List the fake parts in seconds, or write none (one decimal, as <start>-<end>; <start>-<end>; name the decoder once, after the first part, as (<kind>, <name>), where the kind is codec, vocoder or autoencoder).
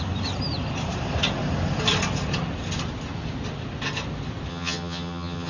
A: 4.5-5.5 (vocoder, HiFi-GAN)